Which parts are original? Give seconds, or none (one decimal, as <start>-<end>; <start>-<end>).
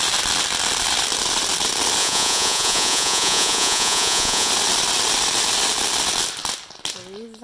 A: 0.0-2.0; 4.5-7.4